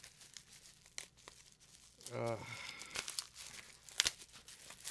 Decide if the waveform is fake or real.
real